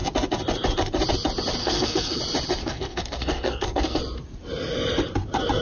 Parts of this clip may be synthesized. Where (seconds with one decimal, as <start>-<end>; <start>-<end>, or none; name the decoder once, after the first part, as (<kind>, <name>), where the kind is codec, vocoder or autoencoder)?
1.6-2.2 (codec, SNAC); 2.6-4.0